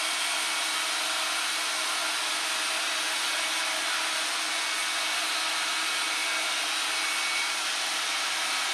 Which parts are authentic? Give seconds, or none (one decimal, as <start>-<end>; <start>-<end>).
0.0-8.7